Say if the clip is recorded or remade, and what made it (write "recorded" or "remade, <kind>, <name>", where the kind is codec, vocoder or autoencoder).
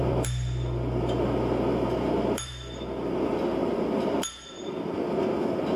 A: remade, vocoder, BigVGAN v2